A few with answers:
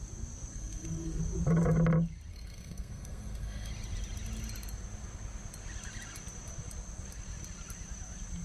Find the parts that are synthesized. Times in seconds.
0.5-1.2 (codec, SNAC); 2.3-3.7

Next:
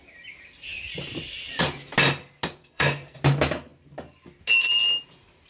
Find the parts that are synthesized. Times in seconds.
2.6-3.2 (codec, SNAC)

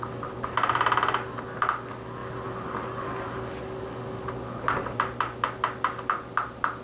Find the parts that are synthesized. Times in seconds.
none

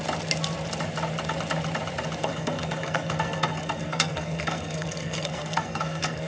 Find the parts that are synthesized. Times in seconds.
2.2-6.3 (codec, SNAC)

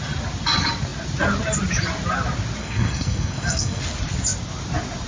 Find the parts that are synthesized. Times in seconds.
2.6-3.8 (codec, SNAC)